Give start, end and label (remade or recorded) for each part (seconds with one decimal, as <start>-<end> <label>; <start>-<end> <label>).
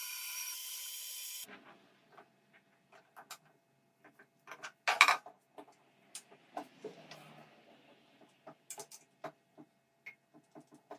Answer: 0.0-0.7 remade; 0.7-11.0 recorded